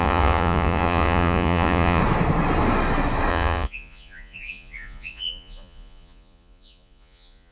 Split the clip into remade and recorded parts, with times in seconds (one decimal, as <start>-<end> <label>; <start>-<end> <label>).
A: 0.0-2.0 remade; 2.0-3.3 recorded; 3.3-7.5 remade